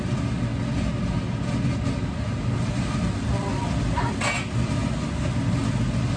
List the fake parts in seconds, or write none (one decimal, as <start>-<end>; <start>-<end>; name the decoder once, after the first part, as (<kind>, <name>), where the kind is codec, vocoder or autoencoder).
none

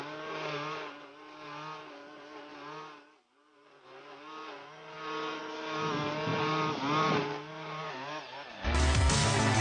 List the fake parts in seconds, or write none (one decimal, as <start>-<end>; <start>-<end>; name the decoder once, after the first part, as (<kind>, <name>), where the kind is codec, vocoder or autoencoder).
none